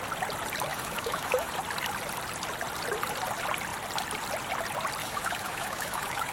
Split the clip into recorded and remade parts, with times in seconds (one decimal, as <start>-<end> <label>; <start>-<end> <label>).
0.0-0.7 recorded; 0.7-1.5 remade; 1.5-5.0 recorded; 5.0-6.3 remade